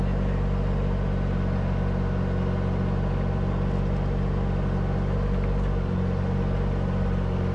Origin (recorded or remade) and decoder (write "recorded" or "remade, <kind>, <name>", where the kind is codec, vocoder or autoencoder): recorded